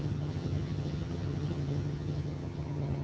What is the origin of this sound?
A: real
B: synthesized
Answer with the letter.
B